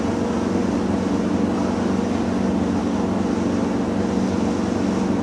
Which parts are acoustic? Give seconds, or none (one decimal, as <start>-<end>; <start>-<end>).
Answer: 0.0-5.2